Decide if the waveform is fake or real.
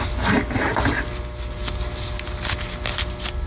real